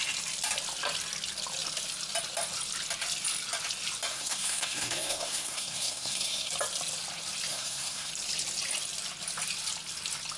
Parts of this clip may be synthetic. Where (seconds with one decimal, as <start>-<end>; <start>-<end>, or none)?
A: 4.1-6.5; 7.5-8.1